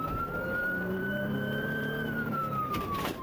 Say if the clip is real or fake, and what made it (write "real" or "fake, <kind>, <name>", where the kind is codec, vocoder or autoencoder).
fake, vocoder, BigVGAN v2